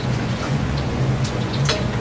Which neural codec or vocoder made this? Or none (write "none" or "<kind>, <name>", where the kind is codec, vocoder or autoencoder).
vocoder, Vocos